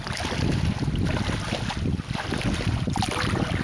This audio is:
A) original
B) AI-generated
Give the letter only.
A